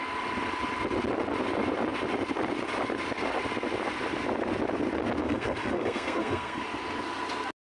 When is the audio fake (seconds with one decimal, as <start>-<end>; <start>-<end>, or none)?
5.2-6.6